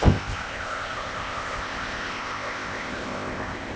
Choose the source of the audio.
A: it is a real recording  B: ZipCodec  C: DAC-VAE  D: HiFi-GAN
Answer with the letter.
B